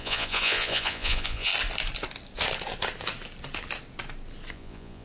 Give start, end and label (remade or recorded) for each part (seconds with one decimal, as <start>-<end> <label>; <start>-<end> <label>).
0.0-1.5 remade; 1.5-4.5 recorded; 4.5-5.0 remade